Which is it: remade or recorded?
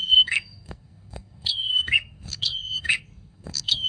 remade